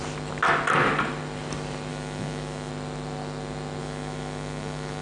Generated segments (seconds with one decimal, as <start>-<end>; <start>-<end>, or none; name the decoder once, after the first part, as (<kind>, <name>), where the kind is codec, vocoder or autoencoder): 1.9-2.7 (autoencoder, DAC-VAE); 3.8-5.0